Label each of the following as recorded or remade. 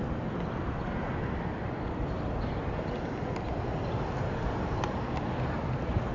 recorded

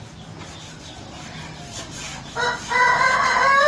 recorded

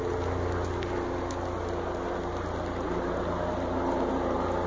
recorded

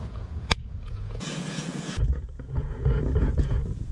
remade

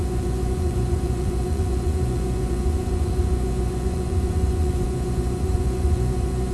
remade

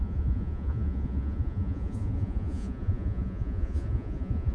remade